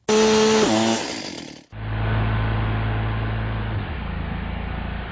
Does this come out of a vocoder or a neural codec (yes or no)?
no